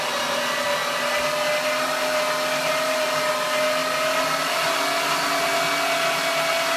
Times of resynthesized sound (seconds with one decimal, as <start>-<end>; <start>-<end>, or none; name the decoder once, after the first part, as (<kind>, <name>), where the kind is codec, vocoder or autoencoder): none